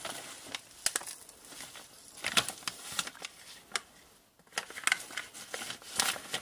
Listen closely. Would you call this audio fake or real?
real